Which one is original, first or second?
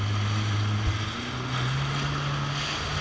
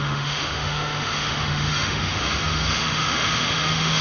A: first